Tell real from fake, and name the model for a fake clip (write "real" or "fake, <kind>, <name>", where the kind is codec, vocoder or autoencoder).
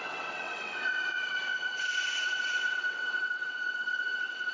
fake, vocoder, WaveNeXt